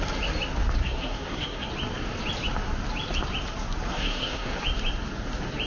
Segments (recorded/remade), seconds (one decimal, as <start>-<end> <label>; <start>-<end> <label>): 0.0-0.8 recorded; 0.8-1.7 remade; 1.7-3.9 recorded; 3.9-4.6 remade; 4.6-5.7 recorded